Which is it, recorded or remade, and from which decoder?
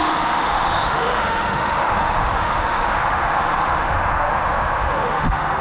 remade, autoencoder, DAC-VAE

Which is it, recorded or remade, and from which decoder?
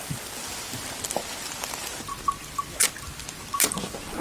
recorded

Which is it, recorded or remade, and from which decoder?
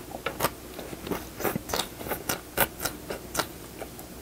recorded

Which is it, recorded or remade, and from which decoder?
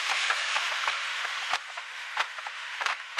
remade, autoencoder, DAC-VAE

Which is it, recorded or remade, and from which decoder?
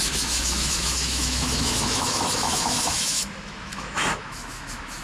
remade, autoencoder, DAC-VAE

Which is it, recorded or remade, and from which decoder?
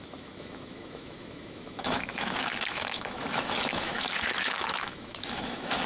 remade, autoencoder, DAC-VAE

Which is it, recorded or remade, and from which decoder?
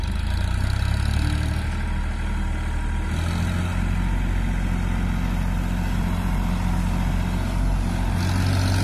recorded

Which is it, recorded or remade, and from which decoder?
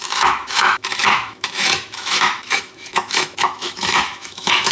remade, autoencoder, DAC-VAE